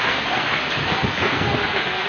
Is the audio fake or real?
fake